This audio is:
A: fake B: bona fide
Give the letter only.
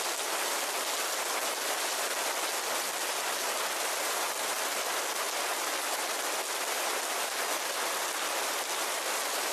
B